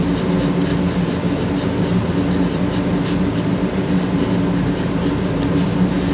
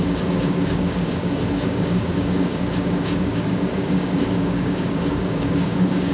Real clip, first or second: first